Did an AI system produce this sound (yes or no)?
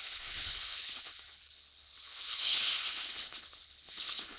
yes